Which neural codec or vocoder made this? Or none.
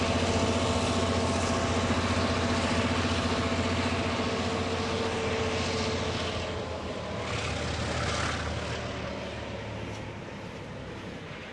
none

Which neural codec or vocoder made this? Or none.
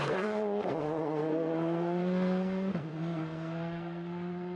codec, SNAC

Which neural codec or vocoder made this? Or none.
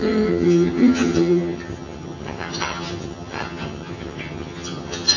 vocoder, HiFi-GAN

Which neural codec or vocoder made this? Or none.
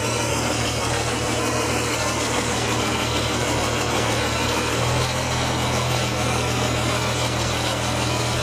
codec, SNAC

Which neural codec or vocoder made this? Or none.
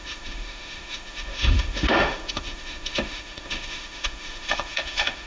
autoencoder, DAC-VAE